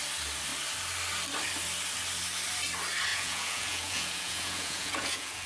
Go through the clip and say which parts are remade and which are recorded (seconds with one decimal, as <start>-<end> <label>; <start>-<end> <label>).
0.0-3.1 recorded; 3.1-5.5 remade